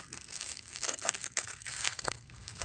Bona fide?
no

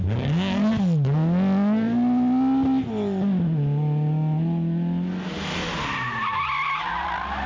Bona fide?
yes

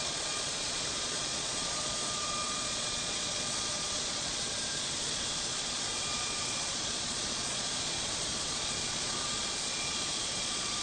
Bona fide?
no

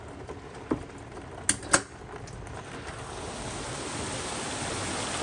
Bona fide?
yes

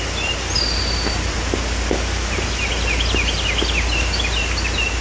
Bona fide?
yes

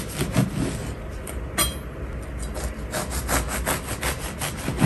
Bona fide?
yes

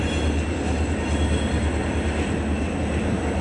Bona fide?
yes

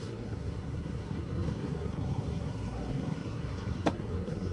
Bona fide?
no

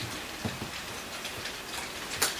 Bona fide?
yes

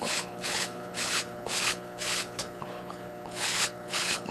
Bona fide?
no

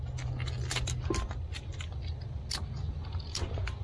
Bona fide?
yes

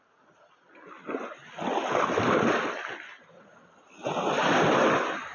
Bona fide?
yes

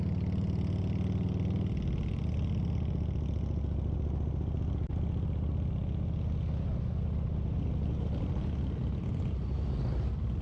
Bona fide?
yes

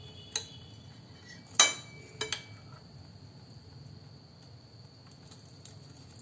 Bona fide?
yes